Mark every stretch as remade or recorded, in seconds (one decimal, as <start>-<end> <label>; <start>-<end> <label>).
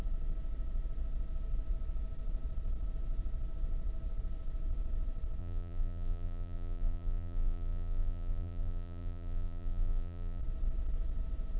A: 0.0-5.4 recorded; 5.4-10.4 remade; 10.4-11.6 recorded